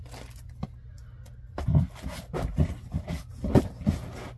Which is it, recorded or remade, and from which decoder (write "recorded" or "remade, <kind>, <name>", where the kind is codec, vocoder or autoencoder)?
recorded